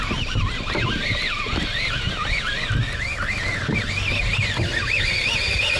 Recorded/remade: recorded